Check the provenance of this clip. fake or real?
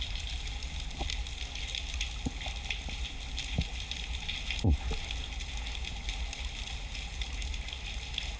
real